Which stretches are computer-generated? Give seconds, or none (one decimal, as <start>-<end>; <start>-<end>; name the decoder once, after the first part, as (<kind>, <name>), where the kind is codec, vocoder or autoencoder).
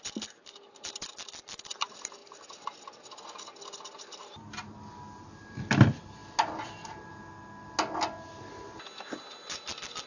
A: none